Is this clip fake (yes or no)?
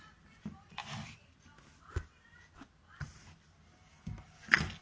no